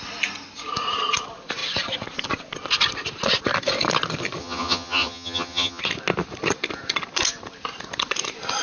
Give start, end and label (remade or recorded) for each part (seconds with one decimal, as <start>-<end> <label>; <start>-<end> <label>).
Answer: 0.0-4.4 recorded; 4.4-5.8 remade; 5.8-8.6 recorded